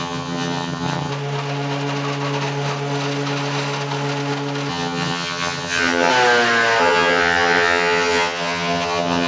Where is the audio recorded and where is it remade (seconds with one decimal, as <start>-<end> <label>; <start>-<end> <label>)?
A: 0.0-1.1 remade; 1.1-4.7 recorded; 4.7-6.1 remade; 6.1-6.8 recorded; 6.8-9.3 remade

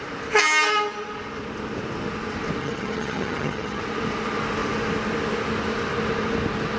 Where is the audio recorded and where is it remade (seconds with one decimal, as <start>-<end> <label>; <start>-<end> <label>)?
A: 0.0-2.6 recorded; 2.6-3.8 remade; 3.8-6.8 recorded

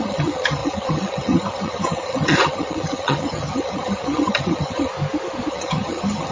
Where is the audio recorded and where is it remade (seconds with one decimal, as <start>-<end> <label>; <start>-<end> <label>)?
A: 0.0-4.9 remade; 4.9-5.5 recorded; 5.5-6.3 remade